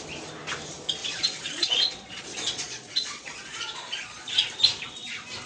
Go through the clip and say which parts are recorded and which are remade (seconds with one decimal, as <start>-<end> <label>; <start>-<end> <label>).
0.0-1.0 recorded; 1.0-4.3 remade; 4.3-5.5 recorded